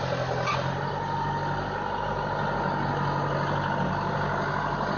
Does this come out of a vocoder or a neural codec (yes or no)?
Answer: no